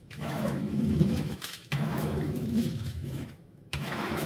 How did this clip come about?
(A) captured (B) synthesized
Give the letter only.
B